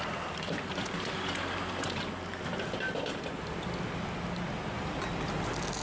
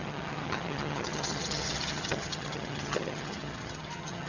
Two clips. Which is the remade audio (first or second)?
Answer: second